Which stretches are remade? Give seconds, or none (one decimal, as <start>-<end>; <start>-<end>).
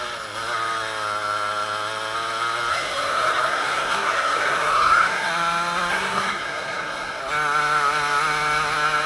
2.7-5.3; 5.9-7.2